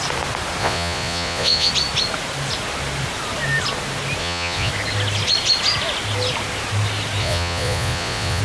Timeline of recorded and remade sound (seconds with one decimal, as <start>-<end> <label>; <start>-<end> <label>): 0.0-0.6 recorded; 0.6-1.7 remade; 1.7-4.2 recorded; 4.2-4.7 remade; 4.7-7.2 recorded; 7.2-8.4 remade